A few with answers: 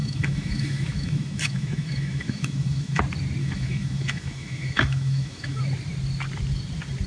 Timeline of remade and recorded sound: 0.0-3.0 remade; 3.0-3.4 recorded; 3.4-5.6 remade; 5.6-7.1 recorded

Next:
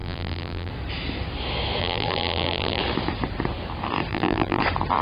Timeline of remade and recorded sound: 0.0-0.7 remade; 0.7-1.8 recorded; 1.8-2.8 remade; 2.8-4.1 recorded; 4.1-4.6 remade; 4.6-5.0 recorded